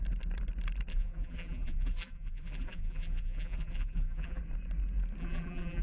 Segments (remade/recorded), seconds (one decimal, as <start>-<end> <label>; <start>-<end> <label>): 0.0-0.9 recorded; 0.9-4.4 remade; 4.4-5.2 recorded; 5.2-5.8 remade